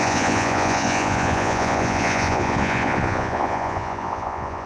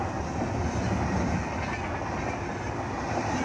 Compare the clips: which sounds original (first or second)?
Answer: second